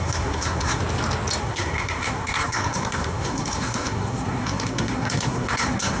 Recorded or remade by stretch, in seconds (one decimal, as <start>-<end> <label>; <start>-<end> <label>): 0.0-0.8 remade; 0.8-1.4 recorded; 1.4-6.0 remade